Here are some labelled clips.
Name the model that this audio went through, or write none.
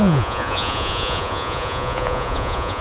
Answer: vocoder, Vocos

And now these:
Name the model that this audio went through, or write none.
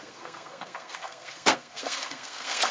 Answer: codec, SNAC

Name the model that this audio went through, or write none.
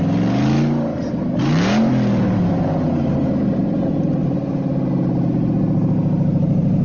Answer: none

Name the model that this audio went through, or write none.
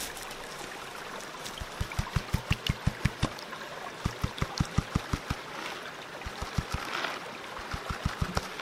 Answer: none